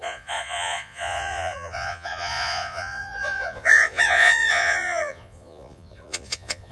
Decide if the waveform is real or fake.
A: fake